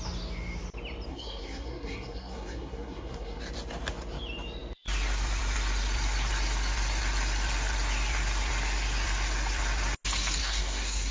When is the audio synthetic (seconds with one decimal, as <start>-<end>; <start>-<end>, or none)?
1.1-3.4; 10.4-11.1